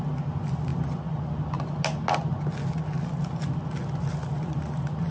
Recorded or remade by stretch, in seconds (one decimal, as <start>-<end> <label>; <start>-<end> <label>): 0.0-5.1 recorded